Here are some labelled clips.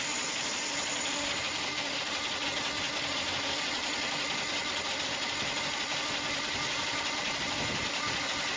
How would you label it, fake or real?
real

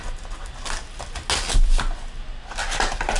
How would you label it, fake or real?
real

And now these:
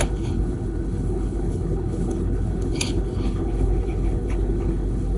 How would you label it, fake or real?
fake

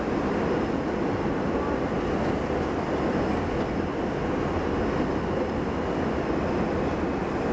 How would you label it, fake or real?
real